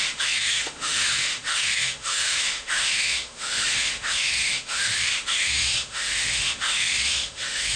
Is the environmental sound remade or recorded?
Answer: remade